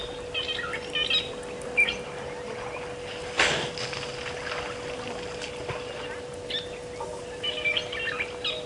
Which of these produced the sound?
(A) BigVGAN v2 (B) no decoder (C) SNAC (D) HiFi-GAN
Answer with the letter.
B